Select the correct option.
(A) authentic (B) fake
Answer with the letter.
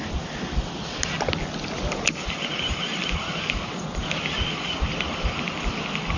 A